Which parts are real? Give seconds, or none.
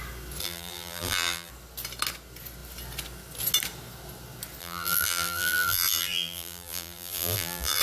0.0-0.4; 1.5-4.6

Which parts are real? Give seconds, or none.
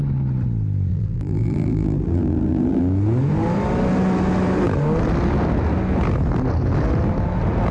0.0-0.9; 2.8-7.7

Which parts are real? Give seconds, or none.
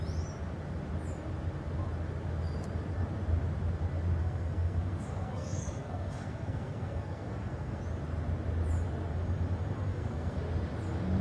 0.0-4.2; 7.8-9.9; 10.4-11.2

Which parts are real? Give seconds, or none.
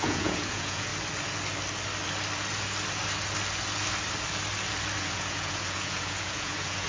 0.9-5.0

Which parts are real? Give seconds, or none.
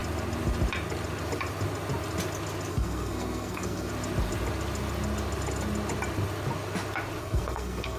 0.0-2.7; 3.9-7.2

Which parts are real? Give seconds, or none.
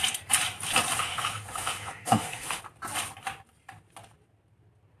0.0-1.0; 2.6-5.0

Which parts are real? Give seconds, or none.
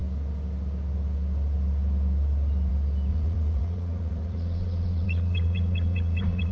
0.0-3.1